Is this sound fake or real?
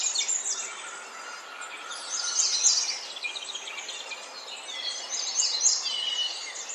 real